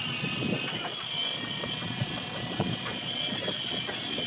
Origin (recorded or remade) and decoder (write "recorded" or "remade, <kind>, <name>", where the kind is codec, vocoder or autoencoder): remade, vocoder, Vocos